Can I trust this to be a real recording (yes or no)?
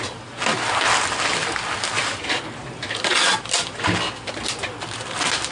yes